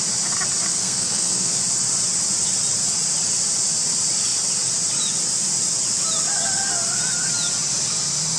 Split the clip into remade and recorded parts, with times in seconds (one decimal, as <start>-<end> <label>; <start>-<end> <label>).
0.0-0.7 recorded; 0.7-1.6 remade; 1.6-8.4 recorded